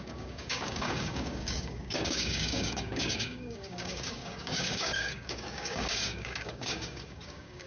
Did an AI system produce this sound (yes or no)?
yes